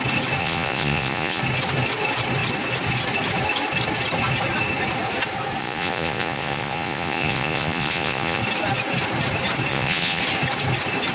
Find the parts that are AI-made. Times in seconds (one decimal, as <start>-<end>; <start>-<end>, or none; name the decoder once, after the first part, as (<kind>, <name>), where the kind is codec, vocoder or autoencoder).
0.4-1.4 (vocoder, Vocos); 5.6-8.4; 9.7-10.2